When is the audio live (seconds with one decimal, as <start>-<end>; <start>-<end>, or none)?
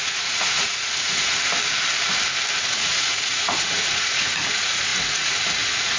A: 1.4-2.6